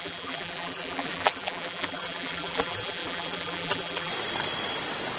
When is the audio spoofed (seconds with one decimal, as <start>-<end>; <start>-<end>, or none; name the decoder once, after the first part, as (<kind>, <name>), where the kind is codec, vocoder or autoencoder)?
0.0-4.1 (vocoder, BigVGAN v2)